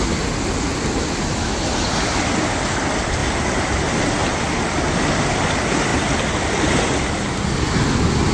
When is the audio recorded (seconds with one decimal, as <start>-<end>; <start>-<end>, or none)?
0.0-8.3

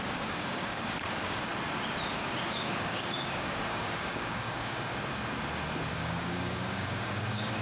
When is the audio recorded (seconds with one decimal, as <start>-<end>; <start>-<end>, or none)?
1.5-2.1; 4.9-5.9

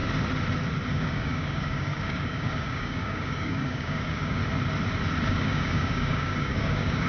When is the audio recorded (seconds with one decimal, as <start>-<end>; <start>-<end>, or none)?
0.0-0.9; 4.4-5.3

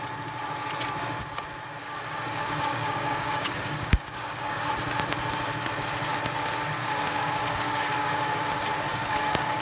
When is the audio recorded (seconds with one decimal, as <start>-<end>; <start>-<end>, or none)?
0.0-1.8; 4.7-6.8; 8.4-8.9

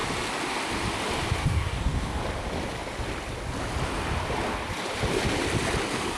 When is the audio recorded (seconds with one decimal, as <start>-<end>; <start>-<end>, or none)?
0.0-1.4; 2.2-6.2